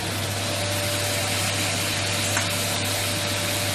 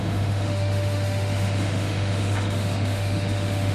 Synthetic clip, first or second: second